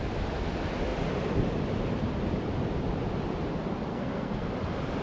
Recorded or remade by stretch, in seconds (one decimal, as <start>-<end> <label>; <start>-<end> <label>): 0.0-3.9 recorded; 3.9-4.5 remade; 4.5-5.0 recorded